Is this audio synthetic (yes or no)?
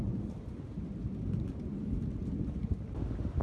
no